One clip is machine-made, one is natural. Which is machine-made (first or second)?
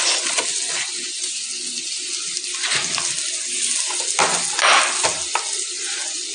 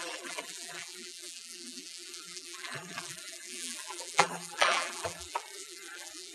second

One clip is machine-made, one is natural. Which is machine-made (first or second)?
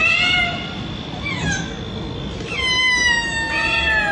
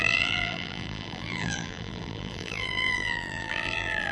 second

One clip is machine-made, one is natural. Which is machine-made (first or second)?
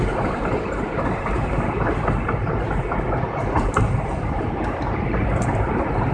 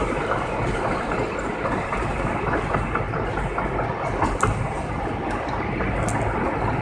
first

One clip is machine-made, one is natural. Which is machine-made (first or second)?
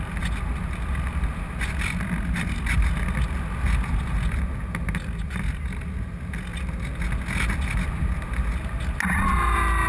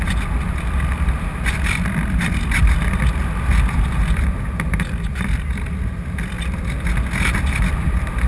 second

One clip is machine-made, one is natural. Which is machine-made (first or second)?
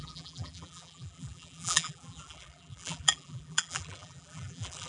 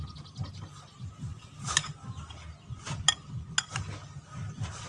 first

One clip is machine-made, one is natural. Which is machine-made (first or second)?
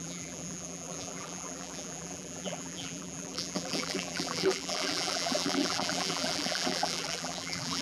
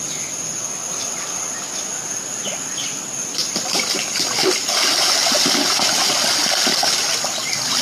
first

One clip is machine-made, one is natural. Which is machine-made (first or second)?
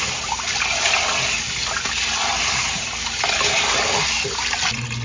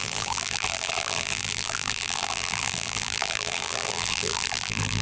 second